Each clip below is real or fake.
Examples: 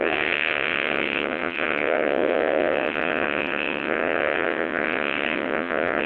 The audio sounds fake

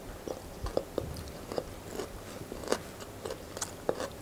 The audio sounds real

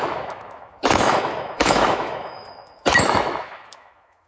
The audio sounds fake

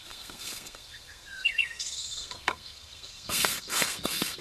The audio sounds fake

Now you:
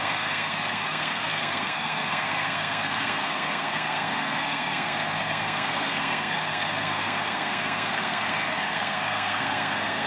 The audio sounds fake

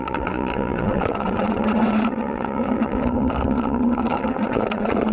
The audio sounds fake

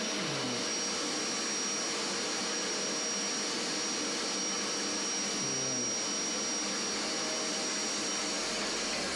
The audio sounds real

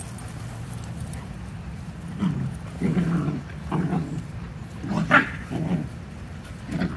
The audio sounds real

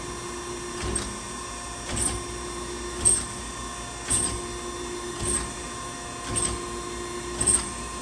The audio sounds real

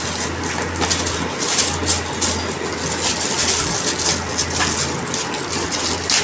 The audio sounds real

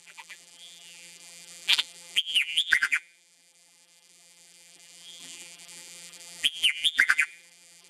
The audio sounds fake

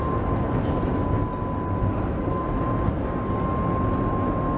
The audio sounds real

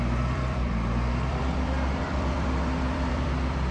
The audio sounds fake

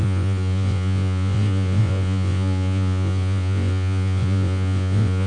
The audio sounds fake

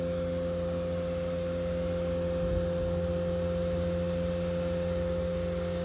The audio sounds real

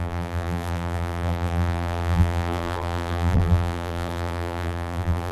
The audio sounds fake